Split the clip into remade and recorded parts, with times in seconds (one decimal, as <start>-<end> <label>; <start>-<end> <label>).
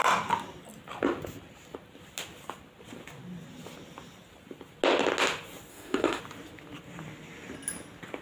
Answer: 0.0-5.7 recorded; 5.7-6.2 remade; 6.2-8.2 recorded